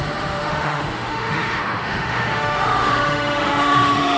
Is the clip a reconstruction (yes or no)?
yes